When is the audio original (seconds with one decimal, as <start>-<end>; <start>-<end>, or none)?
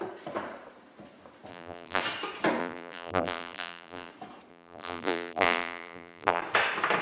0.0-1.5; 2.0-2.6; 4.1-4.5; 6.4-7.0